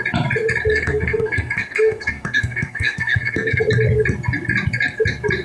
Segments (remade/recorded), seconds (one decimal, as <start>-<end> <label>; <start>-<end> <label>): 0.0-0.7 recorded; 0.7-3.6 remade; 3.6-5.4 recorded